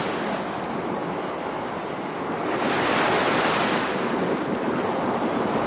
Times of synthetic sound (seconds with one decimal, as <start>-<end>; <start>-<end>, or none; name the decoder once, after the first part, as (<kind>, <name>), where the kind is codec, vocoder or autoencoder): none